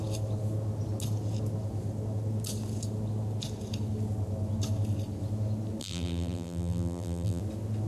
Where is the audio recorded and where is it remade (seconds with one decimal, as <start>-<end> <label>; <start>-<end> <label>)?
0.0-5.8 recorded; 5.8-7.4 remade; 7.4-7.9 recorded